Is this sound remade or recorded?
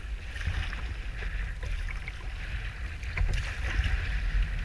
recorded